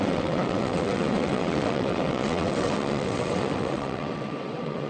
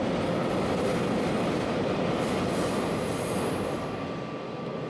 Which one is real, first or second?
second